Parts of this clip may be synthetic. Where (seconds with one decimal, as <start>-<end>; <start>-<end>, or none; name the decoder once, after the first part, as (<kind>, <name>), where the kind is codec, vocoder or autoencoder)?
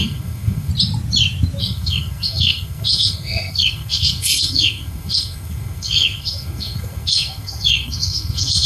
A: 0.0-0.7 (codec, SNAC); 1.6-8.7